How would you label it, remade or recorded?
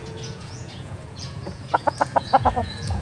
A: remade